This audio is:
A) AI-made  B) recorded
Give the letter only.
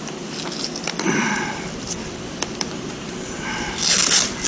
B